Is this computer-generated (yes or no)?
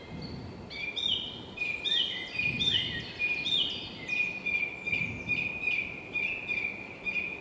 no